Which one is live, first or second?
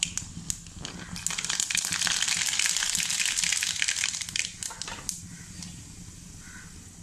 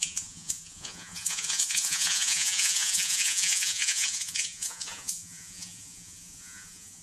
first